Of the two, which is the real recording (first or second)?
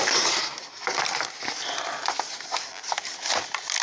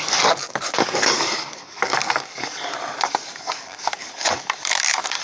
first